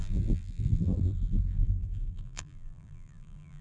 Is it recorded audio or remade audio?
remade